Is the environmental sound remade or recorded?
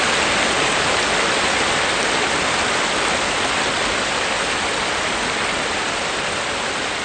recorded